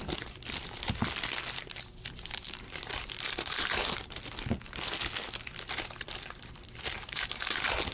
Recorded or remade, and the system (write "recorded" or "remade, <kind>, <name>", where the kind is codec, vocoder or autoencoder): remade, vocoder, BigVGAN v2